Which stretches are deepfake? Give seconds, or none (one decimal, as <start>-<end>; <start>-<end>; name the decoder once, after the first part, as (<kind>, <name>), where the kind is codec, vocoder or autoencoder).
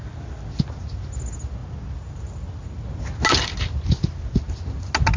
none